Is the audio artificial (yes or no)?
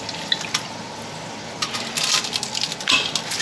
no